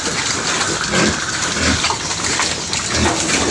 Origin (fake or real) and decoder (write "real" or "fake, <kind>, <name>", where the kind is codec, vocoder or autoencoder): real